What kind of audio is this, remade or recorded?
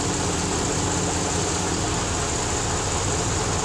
recorded